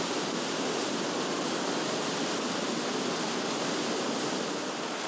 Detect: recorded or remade recorded